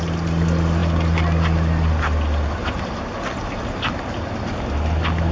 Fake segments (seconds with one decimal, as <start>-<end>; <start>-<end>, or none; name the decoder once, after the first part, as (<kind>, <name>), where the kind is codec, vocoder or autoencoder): none